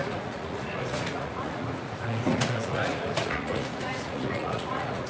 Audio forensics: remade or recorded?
remade